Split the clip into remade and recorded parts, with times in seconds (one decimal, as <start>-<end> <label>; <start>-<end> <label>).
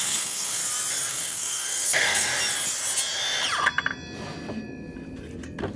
0.0-0.6 remade; 0.6-1.1 recorded; 1.1-2.3 remade; 2.3-5.8 recorded